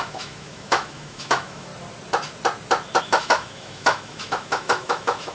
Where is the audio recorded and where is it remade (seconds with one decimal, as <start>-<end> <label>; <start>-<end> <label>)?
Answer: 0.0-1.7 remade; 1.7-3.0 recorded; 3.0-5.3 remade